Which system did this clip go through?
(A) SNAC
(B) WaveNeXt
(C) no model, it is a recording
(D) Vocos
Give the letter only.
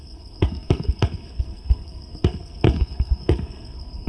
A